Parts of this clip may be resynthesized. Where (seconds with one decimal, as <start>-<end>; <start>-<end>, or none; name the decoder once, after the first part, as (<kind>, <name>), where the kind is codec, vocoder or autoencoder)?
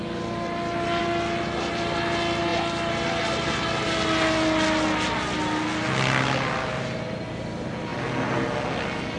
none